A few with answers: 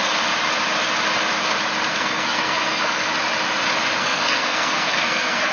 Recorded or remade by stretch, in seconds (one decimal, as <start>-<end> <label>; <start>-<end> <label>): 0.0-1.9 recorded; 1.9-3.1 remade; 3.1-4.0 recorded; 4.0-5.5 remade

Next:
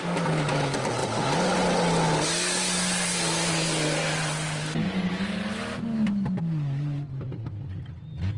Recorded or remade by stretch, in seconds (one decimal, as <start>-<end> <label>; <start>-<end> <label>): 0.0-8.4 recorded

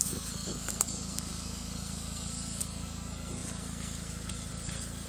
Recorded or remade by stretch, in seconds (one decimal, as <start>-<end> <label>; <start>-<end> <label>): 0.0-5.1 remade

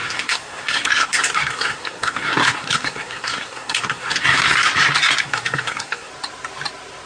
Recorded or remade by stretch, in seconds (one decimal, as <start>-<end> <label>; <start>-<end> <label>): 0.0-4.7 remade; 4.7-5.2 recorded; 5.2-6.1 remade; 6.1-7.1 recorded

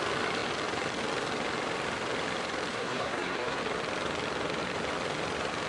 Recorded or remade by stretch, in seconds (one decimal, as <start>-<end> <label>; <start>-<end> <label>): 0.0-2.7 recorded; 2.7-3.6 remade; 3.6-5.7 recorded